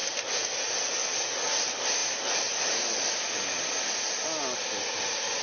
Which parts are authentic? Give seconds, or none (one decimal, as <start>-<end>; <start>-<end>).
0.0-5.4